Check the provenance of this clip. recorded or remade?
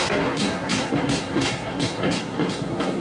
remade